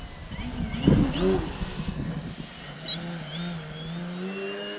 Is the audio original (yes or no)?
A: yes